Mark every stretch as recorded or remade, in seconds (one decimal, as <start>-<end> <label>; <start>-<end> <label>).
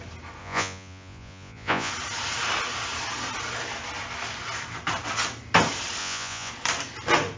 0.0-0.4 recorded; 0.4-1.9 remade; 1.9-6.0 recorded; 6.0-6.5 remade; 6.5-7.4 recorded